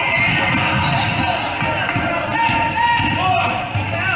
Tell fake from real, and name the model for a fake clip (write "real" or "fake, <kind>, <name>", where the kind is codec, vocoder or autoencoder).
real